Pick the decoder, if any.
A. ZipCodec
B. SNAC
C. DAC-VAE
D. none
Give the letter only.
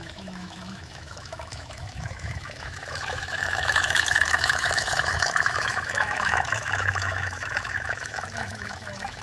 C